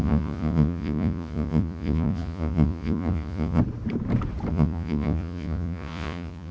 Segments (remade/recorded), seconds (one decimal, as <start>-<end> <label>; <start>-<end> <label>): 0.0-3.6 remade; 3.6-4.5 recorded; 4.5-6.5 remade